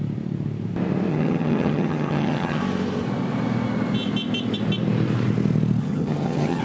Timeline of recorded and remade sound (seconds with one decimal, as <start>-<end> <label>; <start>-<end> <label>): 0.0-1.1 recorded; 1.1-2.6 remade; 2.6-5.8 recorded; 5.8-6.6 remade